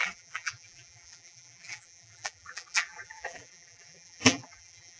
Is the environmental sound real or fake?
fake